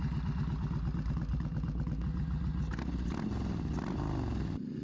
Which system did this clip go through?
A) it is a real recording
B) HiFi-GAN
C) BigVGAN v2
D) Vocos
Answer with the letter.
A